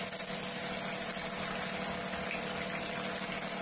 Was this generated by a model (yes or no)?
no